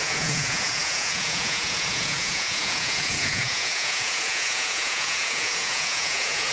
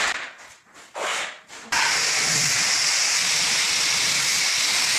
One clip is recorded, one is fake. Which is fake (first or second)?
first